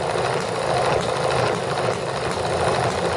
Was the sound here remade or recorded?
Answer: recorded